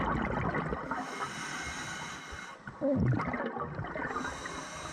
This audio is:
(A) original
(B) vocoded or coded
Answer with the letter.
A